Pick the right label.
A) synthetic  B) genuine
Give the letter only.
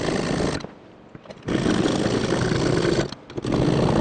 B